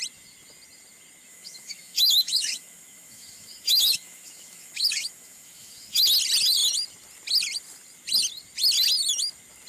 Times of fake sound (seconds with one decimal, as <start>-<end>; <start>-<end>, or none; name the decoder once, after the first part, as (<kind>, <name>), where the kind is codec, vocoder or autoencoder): 1.3-6.0 (autoencoder, DAC-VAE)